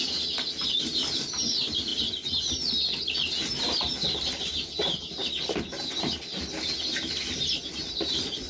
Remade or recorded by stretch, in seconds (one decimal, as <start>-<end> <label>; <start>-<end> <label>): 0.0-8.5 recorded